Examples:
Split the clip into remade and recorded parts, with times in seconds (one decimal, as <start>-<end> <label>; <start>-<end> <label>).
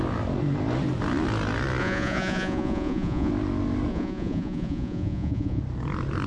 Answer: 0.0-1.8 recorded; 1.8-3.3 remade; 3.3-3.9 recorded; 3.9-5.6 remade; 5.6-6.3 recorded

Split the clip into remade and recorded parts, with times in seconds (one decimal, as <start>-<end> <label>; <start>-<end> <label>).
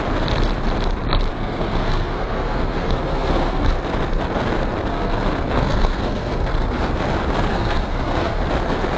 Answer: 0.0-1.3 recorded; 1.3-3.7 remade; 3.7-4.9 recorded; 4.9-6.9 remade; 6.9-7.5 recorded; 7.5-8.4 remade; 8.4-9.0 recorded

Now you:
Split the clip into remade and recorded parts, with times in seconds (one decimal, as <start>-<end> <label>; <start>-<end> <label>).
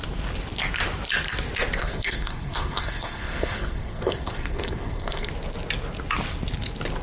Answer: 0.0-1.8 recorded; 1.8-5.3 remade; 5.3-7.0 recorded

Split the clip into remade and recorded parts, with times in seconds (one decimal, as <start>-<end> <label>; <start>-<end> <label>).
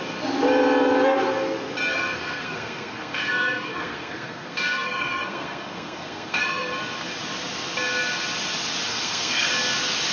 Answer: 0.0-1.9 recorded; 1.9-6.7 remade; 6.7-8.9 recorded; 8.9-9.5 remade; 9.5-10.1 recorded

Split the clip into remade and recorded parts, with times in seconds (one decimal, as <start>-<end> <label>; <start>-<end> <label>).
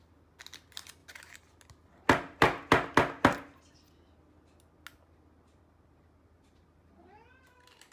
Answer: 0.0-7.9 recorded